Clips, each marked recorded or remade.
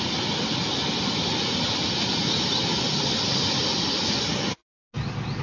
recorded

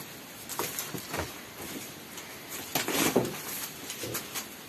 recorded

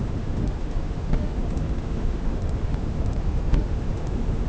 remade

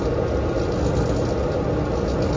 recorded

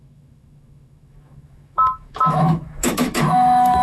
remade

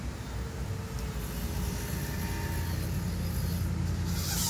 recorded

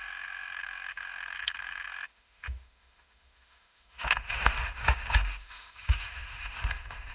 remade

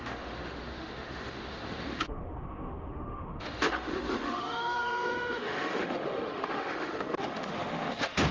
remade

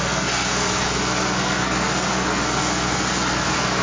remade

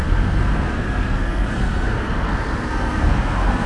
remade